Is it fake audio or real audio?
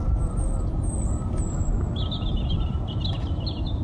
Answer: real